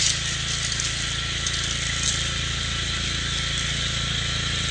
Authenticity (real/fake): real